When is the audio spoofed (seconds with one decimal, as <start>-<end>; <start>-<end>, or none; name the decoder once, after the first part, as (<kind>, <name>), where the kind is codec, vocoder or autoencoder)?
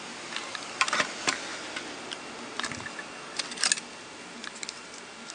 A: none